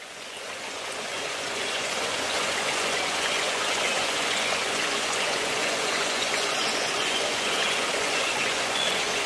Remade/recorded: remade